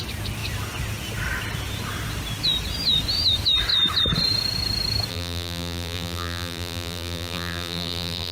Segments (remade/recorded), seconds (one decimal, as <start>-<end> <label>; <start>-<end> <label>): 0.0-5.1 recorded; 5.1-8.3 remade